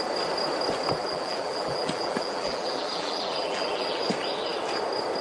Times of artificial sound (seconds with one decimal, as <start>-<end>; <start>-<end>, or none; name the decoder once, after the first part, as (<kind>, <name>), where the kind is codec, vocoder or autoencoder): 1.0-4.1 (vocoder, BigVGAN v2)